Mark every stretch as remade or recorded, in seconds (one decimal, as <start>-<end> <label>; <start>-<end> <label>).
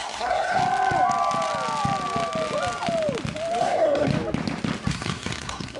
0.0-0.6 remade; 0.6-3.6 recorded; 3.6-4.1 remade; 4.1-4.9 recorded; 4.9-5.8 remade